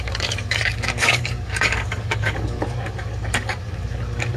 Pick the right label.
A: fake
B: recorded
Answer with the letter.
A